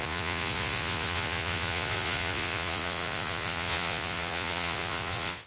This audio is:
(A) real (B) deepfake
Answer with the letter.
B